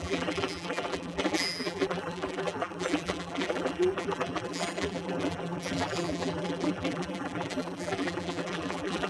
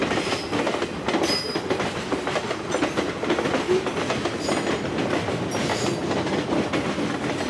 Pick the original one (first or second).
second